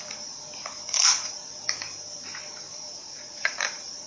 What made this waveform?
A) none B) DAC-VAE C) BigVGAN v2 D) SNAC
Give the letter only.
C